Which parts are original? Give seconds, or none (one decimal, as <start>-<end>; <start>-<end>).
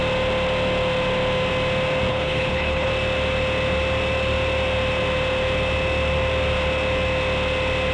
0.0-2.1; 2.9-7.9